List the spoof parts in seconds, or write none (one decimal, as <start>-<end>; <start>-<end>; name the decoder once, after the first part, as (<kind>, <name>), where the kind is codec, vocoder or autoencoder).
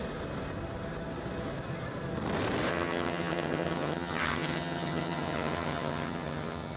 2.7-6.8 (vocoder, HiFi-GAN)